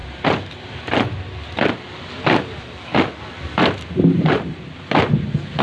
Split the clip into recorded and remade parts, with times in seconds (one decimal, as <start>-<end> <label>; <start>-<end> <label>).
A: 0.0-5.6 recorded